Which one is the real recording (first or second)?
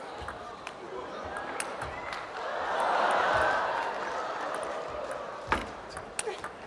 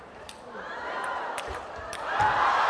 first